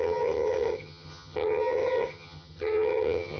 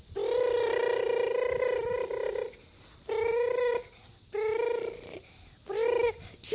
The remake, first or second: first